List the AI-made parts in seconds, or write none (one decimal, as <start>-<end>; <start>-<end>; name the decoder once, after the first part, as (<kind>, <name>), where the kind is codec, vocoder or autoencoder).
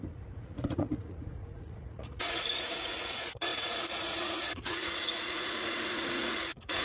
0.0-6.8 (vocoder, Vocos)